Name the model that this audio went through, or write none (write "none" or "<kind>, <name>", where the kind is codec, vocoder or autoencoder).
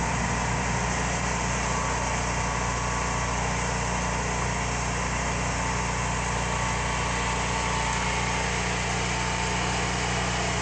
none